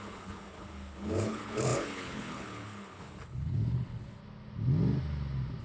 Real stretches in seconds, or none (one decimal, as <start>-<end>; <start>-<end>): 4.2-5.6